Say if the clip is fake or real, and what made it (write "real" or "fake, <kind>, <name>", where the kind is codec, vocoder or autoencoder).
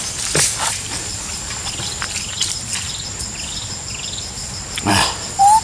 real